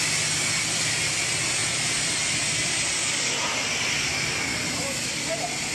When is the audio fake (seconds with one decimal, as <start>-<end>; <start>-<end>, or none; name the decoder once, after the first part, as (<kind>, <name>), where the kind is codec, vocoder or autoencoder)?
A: none